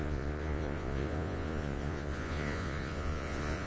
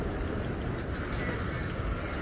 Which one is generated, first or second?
first